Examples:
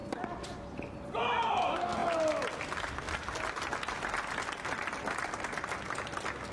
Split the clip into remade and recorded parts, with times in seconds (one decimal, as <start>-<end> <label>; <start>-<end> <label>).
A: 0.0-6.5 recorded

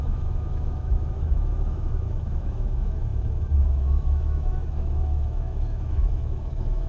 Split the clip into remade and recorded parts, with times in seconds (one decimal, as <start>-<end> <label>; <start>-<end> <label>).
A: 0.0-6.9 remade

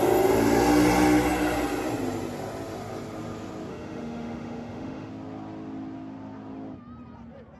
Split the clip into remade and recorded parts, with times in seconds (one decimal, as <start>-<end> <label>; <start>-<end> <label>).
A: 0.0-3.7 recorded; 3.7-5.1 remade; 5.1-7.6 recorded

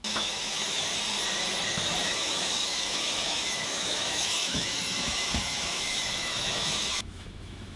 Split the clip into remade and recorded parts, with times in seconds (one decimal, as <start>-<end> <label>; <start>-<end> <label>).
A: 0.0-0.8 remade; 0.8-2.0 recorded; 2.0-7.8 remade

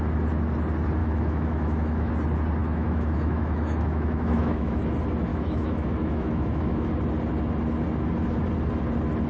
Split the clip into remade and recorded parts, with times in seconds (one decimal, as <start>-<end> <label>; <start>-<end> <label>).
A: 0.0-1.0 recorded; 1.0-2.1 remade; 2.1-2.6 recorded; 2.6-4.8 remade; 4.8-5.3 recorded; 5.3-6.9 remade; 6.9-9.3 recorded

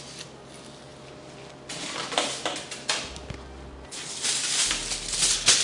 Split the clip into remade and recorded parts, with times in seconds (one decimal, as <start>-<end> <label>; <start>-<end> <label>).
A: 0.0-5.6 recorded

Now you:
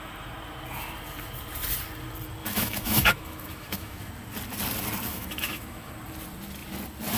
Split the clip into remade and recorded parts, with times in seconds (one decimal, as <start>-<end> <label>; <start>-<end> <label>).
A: 0.0-2.4 recorded; 2.4-4.1 remade; 4.1-5.1 recorded; 5.1-5.9 remade; 5.9-7.2 recorded